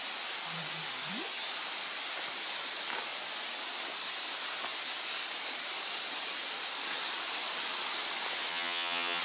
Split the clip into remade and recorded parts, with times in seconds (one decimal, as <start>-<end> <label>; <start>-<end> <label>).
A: 0.0-8.5 recorded; 8.5-9.2 remade